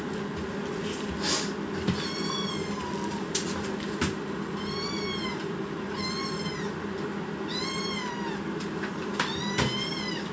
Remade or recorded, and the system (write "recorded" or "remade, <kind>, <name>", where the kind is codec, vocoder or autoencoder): recorded